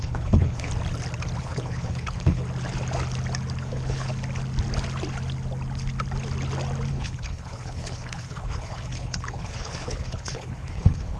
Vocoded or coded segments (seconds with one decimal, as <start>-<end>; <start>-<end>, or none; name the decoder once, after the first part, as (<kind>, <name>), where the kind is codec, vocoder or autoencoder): 0.0-0.7 (codec, HILCodec); 1.4-2.4; 3.6-4.1; 6.9-11.2